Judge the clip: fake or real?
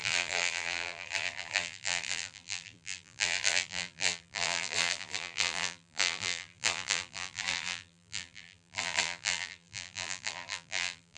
fake